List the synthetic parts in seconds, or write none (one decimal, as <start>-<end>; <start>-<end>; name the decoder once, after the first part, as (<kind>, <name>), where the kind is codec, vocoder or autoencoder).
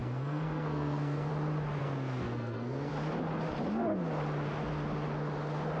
0.0-1.3 (codec, SNAC); 1.8-2.9